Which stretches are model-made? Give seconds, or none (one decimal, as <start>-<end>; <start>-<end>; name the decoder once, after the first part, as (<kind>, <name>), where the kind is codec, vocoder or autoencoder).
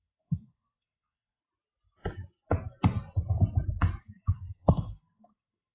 0.0-1.4 (codec, SNAC); 4.0-5.7